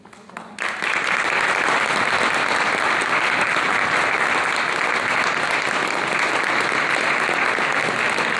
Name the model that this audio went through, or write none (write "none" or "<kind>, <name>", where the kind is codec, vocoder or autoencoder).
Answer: none